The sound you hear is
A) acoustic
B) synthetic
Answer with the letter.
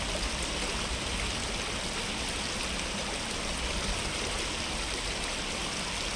A